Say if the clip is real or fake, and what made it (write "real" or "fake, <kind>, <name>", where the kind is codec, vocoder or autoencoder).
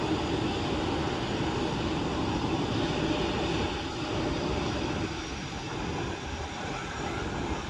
real